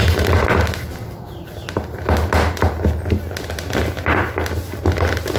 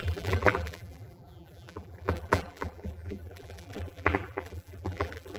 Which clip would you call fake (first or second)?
second